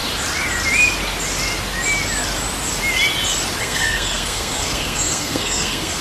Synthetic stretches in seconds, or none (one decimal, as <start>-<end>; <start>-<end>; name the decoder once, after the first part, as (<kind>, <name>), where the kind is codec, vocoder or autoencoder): 3.6-6.0 (codec, SNAC)